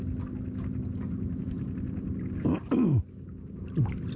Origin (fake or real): real